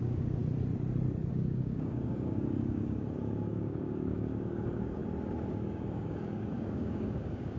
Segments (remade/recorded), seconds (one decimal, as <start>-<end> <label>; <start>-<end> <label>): 0.0-0.4 remade; 0.4-1.3 recorded; 1.3-5.0 remade; 5.0-5.5 recorded; 5.5-7.6 remade